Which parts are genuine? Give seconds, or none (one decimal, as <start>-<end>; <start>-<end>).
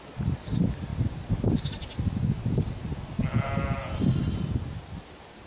0.0-5.5